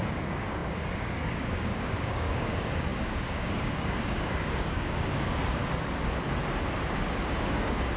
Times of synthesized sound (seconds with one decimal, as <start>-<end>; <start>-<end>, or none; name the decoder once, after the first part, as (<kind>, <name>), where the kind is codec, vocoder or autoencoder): 0.0-5.6 (codec, DAC); 7.3-8.0